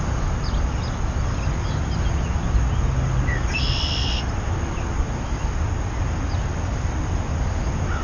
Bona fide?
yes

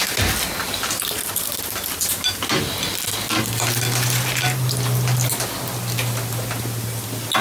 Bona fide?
yes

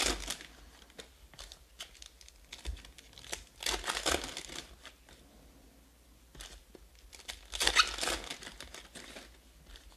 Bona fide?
yes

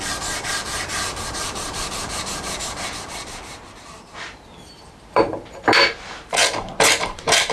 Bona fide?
no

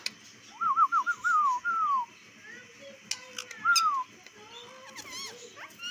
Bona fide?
yes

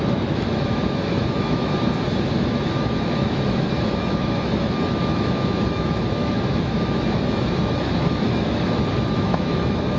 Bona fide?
no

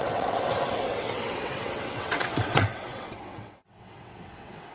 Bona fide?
no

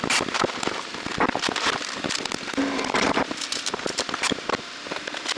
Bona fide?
no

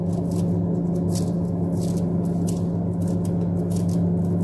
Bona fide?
yes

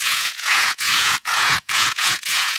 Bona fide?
no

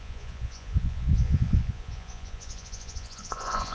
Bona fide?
no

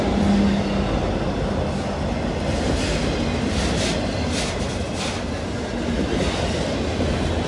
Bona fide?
yes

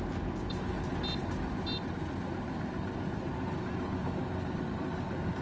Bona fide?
yes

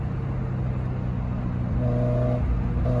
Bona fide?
yes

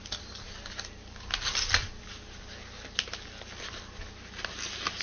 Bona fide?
yes